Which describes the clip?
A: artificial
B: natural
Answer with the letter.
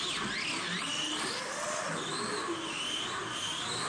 B